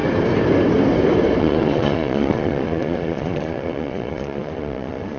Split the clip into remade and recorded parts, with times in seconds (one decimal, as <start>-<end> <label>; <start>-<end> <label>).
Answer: 0.0-1.4 recorded; 1.4-5.2 remade